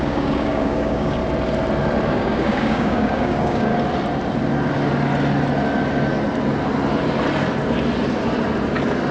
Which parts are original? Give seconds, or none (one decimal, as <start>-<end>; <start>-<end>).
1.2-2.1; 3.7-9.1